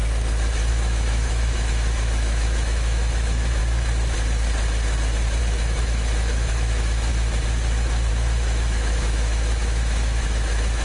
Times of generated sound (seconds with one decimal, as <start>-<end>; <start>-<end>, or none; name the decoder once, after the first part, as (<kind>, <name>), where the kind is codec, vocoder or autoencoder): 0.7-3.6 (autoencoder, DAC-VAE); 5.4-7.1; 8.1-10.8